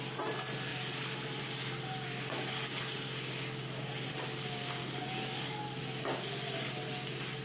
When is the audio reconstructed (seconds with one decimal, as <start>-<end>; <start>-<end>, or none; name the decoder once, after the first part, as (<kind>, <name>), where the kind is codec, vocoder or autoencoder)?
4.8-5.6 (codec, DAC)